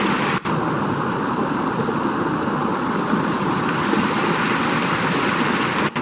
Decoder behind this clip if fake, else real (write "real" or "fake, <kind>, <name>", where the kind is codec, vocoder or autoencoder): real